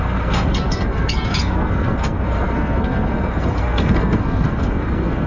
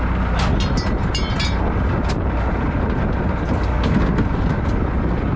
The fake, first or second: first